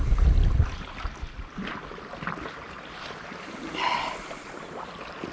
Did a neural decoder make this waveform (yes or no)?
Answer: no